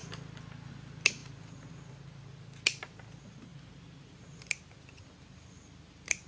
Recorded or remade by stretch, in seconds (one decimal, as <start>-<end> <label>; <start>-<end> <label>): 0.0-6.3 recorded